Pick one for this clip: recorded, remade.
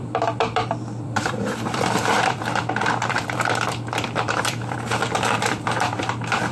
remade